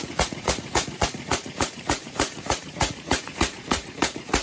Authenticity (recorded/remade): remade